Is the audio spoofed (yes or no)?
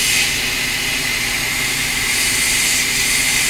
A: no